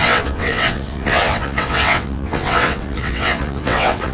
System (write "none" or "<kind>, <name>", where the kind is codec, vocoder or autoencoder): vocoder, WaveNeXt